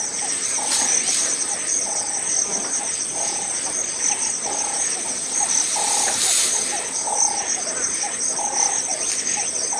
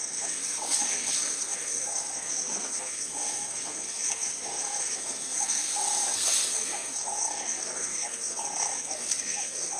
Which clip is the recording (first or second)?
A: first